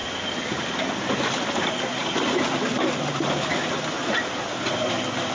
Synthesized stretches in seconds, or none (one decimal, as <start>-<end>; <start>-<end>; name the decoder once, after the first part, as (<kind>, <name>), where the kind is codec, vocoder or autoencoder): none